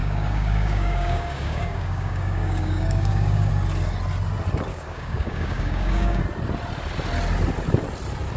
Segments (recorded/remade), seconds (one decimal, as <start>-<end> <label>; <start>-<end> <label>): 0.0-3.5 remade; 3.5-4.7 recorded; 4.7-6.2 remade; 6.2-8.4 recorded